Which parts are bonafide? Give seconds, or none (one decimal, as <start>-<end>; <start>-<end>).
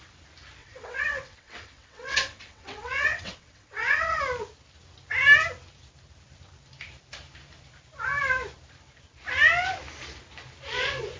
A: 0.0-0.6; 4.2-11.2